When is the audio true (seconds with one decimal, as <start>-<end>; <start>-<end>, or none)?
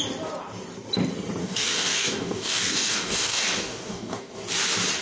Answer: 0.0-1.4; 4.3-5.0